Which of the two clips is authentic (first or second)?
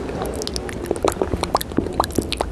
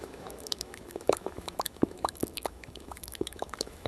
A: first